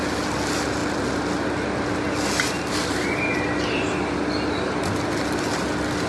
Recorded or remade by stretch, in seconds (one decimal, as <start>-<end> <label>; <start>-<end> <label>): 0.0-6.1 recorded